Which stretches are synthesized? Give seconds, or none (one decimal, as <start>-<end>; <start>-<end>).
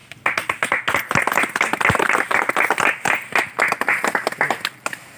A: none